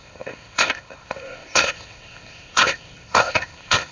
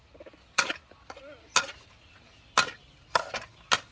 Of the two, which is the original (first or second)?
second